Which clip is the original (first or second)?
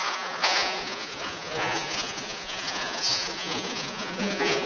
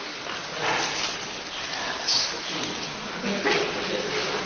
second